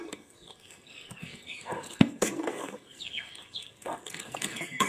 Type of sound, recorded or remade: remade